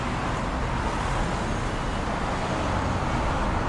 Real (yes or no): yes